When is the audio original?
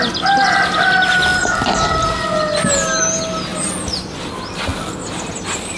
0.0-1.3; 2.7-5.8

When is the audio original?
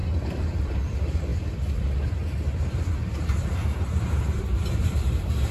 0.0-0.6; 1.3-3.2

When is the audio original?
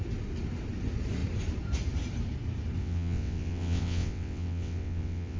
0.0-2.8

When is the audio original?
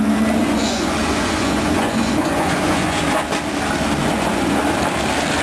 0.0-0.4; 3.0-4.0; 4.6-5.4